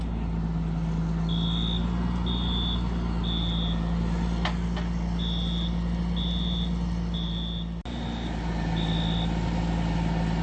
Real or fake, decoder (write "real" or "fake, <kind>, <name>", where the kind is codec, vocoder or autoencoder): real